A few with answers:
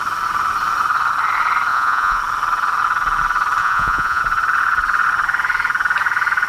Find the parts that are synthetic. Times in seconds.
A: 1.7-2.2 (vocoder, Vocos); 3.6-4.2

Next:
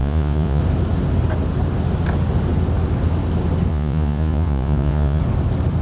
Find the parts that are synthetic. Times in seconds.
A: 0.0-0.6 (vocoder, Vocos); 3.7-5.2